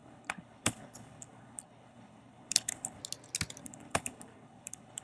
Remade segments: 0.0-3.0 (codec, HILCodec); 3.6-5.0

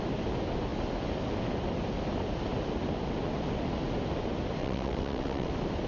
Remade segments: 4.6-5.5 (vocoder, WaveNeXt)

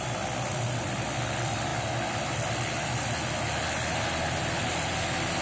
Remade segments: none

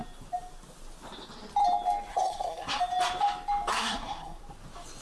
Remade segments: 2.1-2.8 (codec, SNAC); 3.7-4.4

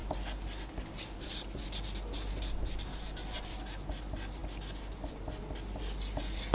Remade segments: none